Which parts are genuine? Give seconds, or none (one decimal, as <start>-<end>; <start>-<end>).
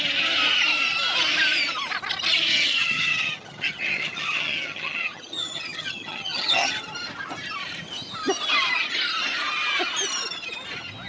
0.0-2.5; 6.7-11.1